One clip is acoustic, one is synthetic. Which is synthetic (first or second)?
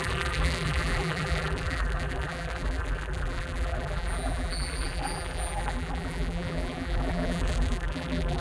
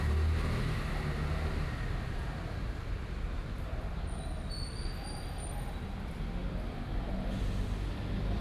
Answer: first